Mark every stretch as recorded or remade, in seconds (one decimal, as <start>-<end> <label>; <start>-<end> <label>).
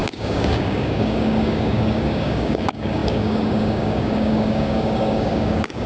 0.0-5.9 remade